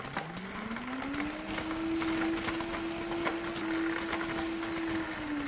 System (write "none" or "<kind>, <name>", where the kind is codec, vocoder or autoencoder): none